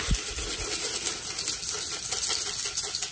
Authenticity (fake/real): real